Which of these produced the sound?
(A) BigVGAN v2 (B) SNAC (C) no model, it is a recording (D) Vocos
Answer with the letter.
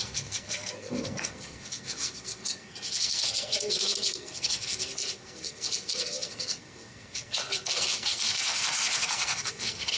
B